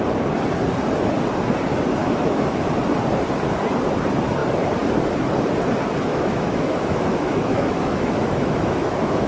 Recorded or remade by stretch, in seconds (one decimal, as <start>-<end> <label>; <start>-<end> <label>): 0.0-2.0 recorded; 2.0-2.6 remade; 2.6-6.1 recorded; 6.1-9.3 remade